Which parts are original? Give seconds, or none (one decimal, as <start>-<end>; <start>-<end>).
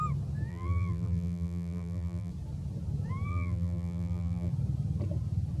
0.0-0.5; 2.3-3.3; 4.5-5.6